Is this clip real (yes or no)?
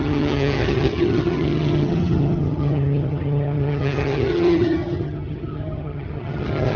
no